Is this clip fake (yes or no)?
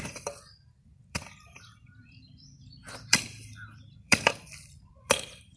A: yes